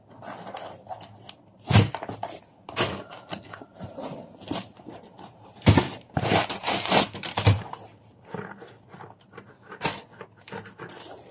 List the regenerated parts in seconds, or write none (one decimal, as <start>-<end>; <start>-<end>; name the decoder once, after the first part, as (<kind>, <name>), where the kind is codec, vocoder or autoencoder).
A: 3.7-7.7 (vocoder, BigVGAN v2)